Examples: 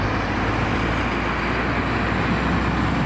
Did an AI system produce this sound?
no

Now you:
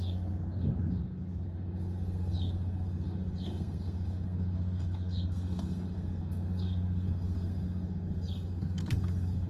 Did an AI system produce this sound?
yes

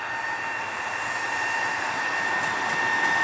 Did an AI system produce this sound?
no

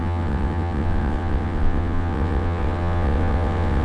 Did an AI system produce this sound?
yes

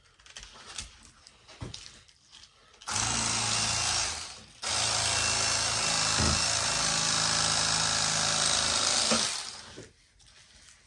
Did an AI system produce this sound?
no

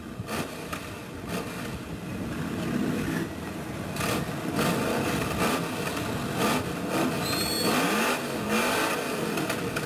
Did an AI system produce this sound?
no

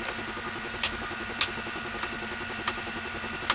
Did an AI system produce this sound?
no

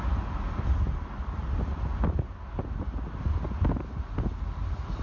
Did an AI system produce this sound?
no